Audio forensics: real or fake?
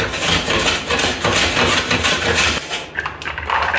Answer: fake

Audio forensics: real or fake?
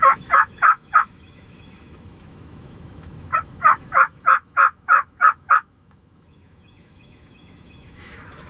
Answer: fake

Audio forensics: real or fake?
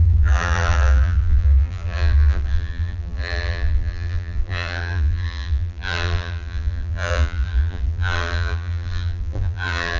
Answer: fake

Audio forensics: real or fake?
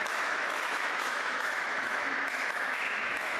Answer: fake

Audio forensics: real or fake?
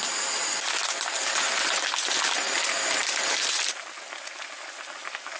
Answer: real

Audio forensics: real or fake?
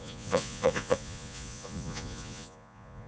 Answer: fake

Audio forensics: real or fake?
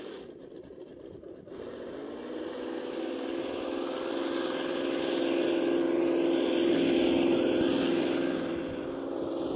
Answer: real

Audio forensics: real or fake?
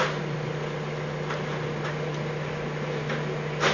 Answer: real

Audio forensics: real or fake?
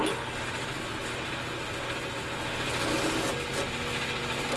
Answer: real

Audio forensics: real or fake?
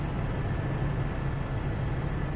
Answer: real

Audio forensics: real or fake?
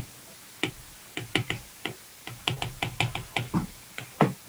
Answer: real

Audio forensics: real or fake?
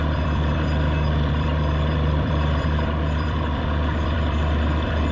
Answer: fake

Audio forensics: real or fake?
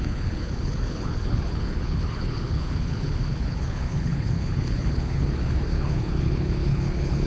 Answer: fake